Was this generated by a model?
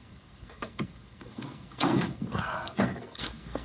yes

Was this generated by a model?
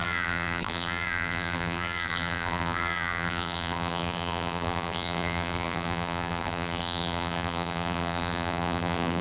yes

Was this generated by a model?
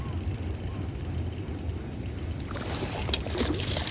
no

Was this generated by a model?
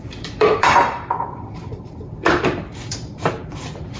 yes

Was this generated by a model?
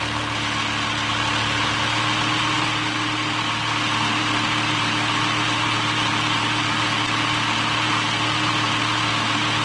no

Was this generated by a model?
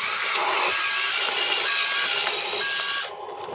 no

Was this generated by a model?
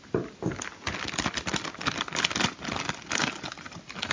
no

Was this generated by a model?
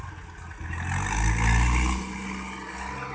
no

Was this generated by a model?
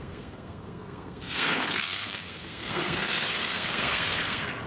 yes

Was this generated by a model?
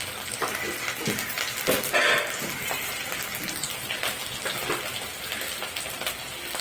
no